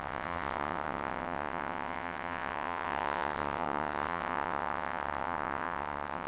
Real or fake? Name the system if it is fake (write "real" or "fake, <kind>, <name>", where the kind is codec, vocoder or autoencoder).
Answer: fake, vocoder, WaveNeXt